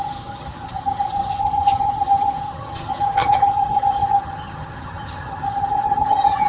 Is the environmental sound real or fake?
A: fake